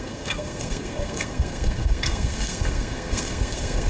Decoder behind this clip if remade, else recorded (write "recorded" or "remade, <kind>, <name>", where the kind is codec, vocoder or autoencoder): remade, codec, SNAC